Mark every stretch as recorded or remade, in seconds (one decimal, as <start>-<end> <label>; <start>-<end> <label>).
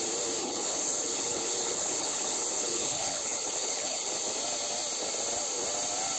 0.0-0.4 recorded; 0.4-4.1 remade; 4.1-6.2 recorded